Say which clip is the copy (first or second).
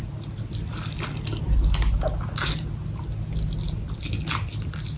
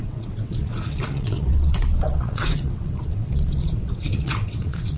second